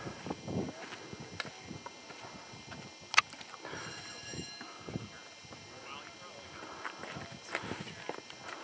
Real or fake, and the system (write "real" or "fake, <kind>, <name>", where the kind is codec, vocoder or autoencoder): real